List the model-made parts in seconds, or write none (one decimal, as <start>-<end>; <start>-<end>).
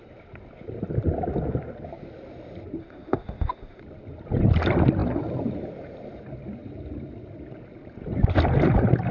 2.8-3.8